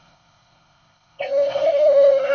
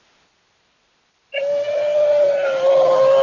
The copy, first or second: first